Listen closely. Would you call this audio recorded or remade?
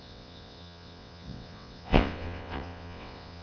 remade